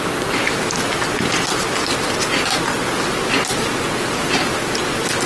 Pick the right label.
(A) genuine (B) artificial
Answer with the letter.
A